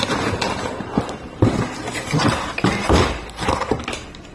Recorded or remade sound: recorded